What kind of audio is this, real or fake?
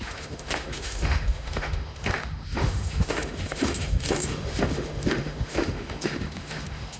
fake